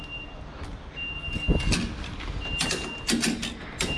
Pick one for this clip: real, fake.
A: real